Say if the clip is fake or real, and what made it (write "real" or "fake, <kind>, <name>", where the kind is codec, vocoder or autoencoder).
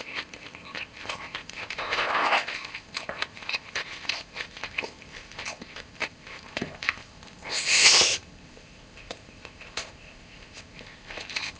fake, codec, ZipCodec